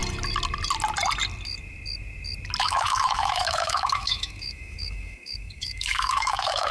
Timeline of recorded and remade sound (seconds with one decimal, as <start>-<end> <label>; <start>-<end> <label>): 0.0-2.6 recorded; 2.6-6.7 remade